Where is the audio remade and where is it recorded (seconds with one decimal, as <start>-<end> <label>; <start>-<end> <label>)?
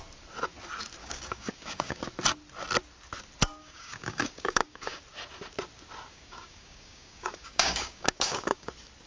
0.0-1.0 recorded; 1.0-2.0 remade; 2.0-3.6 recorded; 3.6-5.0 remade; 5.0-6.1 recorded; 6.1-8.7 remade; 8.7-9.1 recorded